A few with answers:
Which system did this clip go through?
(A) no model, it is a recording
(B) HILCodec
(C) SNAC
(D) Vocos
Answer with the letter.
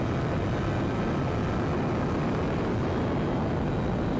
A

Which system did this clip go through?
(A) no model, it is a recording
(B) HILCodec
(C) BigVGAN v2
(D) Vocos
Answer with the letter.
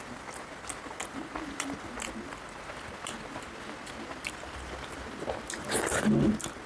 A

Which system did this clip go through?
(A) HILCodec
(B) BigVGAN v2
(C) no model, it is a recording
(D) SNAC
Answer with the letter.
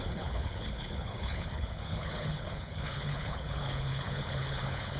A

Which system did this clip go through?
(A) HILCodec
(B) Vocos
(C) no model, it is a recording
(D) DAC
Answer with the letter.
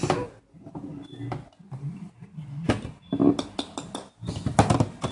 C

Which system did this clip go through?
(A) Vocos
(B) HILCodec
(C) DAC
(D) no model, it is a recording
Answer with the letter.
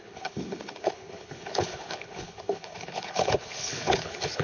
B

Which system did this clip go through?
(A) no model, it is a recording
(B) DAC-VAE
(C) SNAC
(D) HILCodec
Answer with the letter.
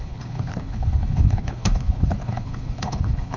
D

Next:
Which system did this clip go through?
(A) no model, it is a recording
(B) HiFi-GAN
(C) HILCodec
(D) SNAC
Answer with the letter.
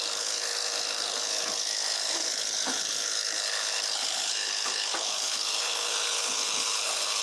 C